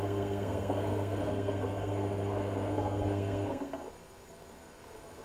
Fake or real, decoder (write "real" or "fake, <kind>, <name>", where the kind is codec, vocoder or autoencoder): fake, codec, SNAC